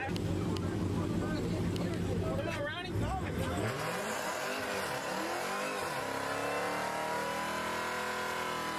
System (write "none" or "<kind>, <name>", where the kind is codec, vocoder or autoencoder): none